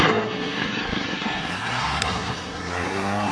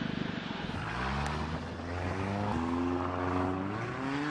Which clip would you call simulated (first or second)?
first